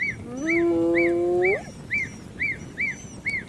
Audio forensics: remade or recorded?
recorded